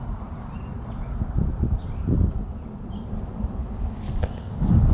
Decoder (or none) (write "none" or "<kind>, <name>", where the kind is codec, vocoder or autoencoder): none